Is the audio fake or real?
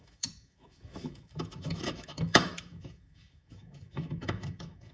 fake